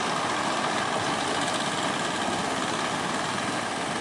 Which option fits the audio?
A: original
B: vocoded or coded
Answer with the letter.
A